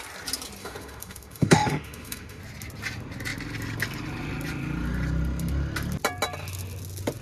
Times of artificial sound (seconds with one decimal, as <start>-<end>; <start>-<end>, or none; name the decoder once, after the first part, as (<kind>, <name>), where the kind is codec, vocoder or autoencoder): 0.6-2.4 (autoencoder, DAC-VAE)